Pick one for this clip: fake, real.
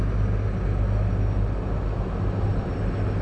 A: real